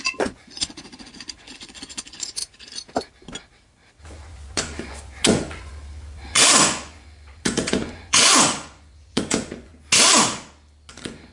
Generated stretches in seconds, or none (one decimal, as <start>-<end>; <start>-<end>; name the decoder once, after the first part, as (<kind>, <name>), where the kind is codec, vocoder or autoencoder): 0.0-2.4 (vocoder, Vocos); 4.0-9.7; 10.9-11.3